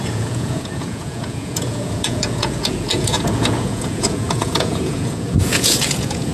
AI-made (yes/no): yes